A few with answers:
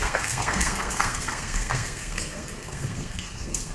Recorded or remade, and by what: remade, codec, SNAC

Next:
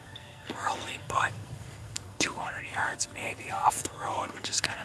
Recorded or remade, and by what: remade, codec, SNAC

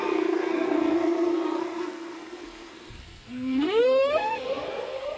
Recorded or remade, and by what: remade, codec, SNAC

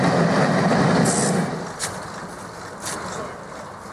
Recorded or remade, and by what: recorded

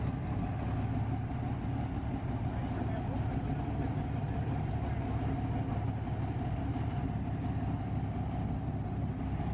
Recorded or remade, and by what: recorded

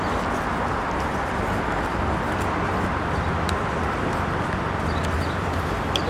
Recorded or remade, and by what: recorded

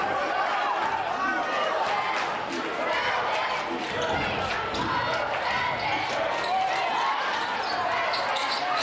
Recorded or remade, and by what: recorded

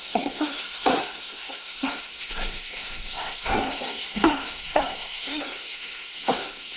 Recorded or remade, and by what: remade, codec, SNAC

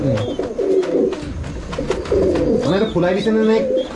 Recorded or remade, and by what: recorded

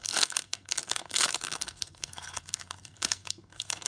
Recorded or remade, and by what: remade, codec, SNAC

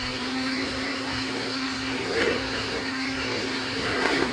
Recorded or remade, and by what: remade, codec, SNAC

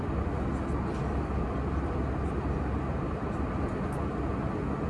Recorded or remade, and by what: recorded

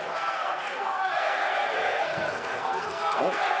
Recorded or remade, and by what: remade, codec, SNAC